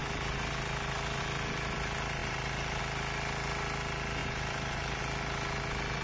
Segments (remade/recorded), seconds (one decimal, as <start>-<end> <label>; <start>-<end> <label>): 0.0-2.2 recorded; 2.2-2.8 remade; 2.8-4.2 recorded; 4.2-5.0 remade; 5.0-6.0 recorded